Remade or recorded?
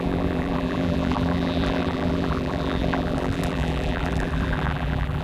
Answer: remade